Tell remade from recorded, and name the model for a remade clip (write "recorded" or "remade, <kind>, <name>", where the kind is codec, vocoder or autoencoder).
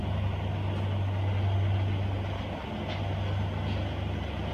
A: recorded